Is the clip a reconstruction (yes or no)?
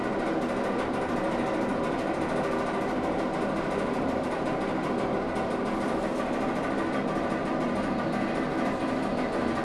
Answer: yes